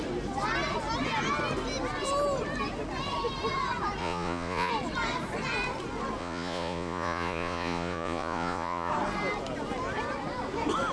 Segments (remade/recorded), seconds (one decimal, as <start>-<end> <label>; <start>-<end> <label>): 0.0-4.0 recorded; 4.0-4.7 remade; 4.7-6.2 recorded; 6.2-8.9 remade; 8.9-10.9 recorded